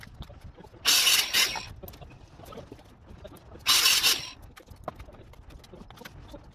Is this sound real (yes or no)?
yes